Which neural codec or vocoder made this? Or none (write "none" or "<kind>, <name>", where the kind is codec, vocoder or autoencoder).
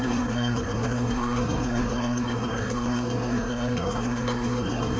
codec, SNAC